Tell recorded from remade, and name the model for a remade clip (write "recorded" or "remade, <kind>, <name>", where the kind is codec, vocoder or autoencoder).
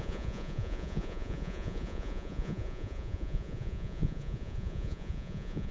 remade, vocoder, Vocos